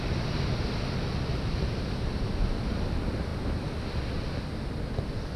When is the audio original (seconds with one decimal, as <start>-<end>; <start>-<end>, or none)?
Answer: 0.0-5.4